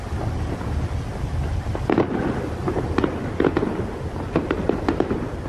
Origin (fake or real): real